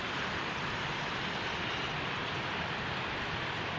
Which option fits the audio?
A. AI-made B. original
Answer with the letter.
B